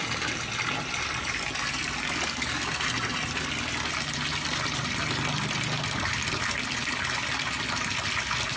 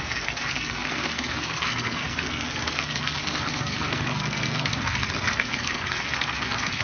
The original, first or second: first